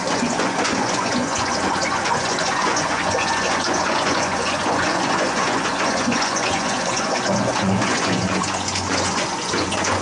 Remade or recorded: remade